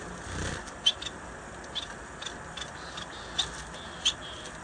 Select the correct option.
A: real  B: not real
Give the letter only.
A